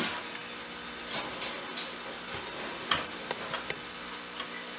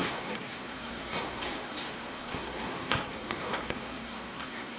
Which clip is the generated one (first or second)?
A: second